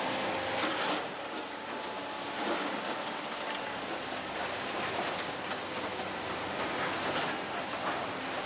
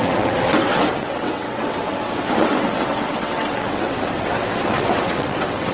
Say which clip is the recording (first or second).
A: first